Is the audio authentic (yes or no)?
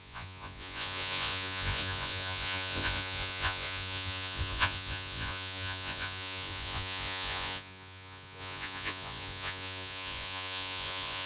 no